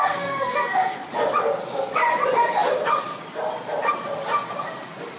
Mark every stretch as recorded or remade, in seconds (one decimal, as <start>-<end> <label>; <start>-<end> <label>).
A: 0.0-1.0 remade; 1.0-5.2 recorded